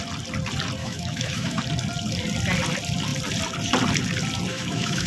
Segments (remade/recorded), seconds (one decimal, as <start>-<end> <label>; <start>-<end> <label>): 0.0-0.8 recorded; 0.8-1.6 remade; 1.6-4.5 recorded; 4.5-5.1 remade